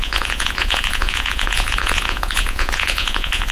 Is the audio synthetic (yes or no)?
yes